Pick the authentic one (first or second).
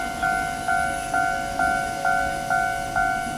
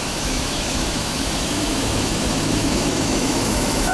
first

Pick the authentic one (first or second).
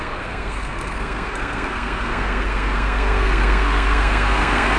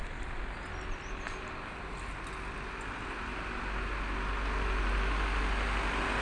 second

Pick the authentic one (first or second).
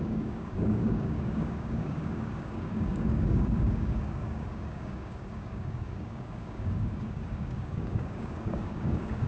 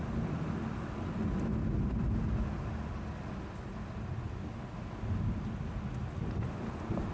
second